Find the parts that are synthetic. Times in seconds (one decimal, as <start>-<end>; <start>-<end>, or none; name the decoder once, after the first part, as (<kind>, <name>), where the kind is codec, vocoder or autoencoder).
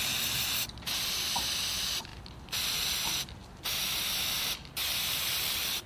none